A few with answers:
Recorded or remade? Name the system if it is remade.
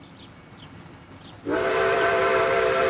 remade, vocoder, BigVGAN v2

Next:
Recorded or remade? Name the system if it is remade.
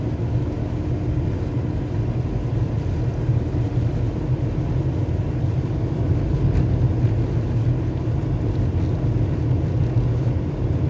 recorded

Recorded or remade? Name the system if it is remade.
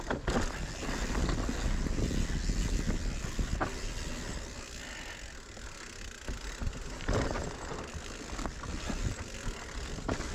recorded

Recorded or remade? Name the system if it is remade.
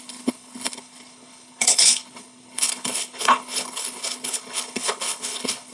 remade, codec, HILCodec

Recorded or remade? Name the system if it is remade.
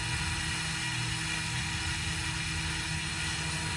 recorded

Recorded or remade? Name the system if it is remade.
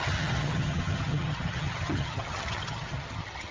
remade, vocoder, HiFi-GAN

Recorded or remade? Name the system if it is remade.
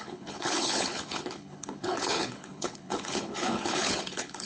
remade, codec, HILCodec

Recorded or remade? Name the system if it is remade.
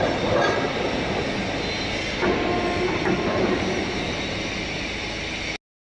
recorded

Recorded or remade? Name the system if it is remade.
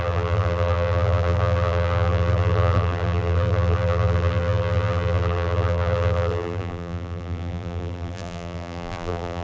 remade, vocoder, BigVGAN v2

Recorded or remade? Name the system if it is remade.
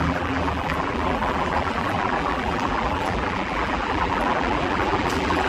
remade, vocoder, BigVGAN v2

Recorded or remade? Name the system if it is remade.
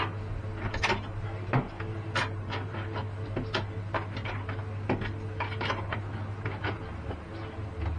recorded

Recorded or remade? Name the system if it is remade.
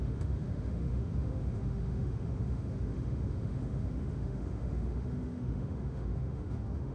remade, autoencoder, DAC-VAE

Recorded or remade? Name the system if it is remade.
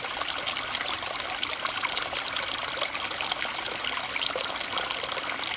recorded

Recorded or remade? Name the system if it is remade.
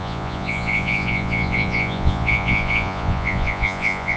remade, vocoder, Vocos